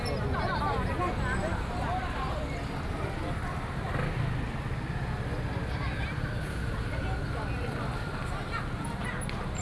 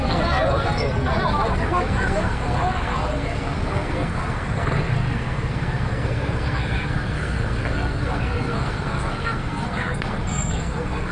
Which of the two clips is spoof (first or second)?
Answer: second